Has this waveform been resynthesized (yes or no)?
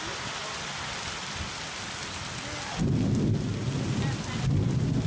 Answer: no